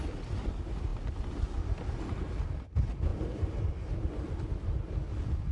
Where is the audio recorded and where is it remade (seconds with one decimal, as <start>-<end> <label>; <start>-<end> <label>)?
0.0-5.5 recorded